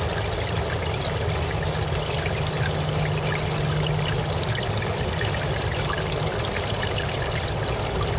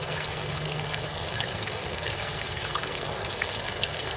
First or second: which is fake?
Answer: second